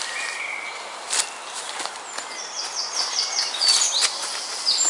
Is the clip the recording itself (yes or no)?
yes